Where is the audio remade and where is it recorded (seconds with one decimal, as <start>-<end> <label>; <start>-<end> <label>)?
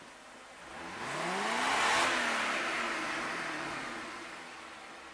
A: 0.0-5.1 recorded